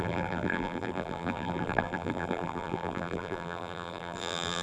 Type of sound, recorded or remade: remade